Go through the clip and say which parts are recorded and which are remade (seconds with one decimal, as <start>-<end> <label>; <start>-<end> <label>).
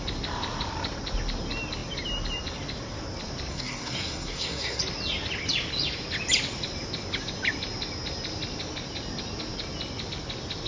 0.0-3.5 recorded; 3.5-4.8 remade; 4.8-10.7 recorded